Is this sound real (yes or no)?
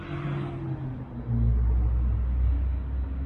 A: yes